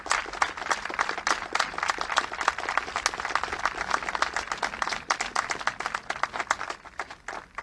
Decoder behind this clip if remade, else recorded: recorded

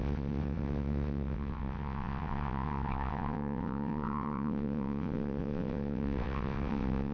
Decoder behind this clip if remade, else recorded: remade, vocoder, WaveNeXt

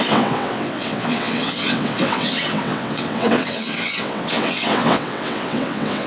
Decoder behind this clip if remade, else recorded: remade, vocoder, WaveNeXt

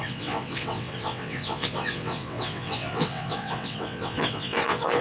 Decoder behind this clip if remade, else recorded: remade, vocoder, WaveNeXt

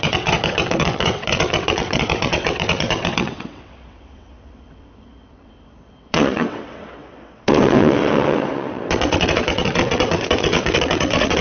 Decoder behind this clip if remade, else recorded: remade, vocoder, WaveNeXt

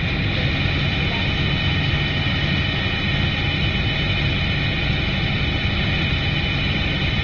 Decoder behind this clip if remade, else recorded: recorded